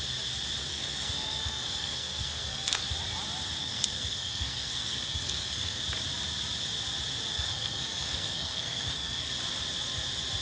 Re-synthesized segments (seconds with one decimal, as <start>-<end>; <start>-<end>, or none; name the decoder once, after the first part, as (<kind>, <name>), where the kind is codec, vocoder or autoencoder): 0.7-2.9 (codec, SNAC); 3.6-5.8; 7.3-9.3